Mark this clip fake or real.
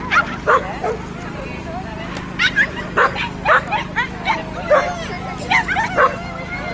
real